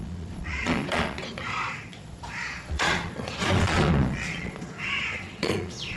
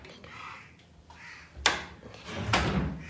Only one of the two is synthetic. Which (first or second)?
first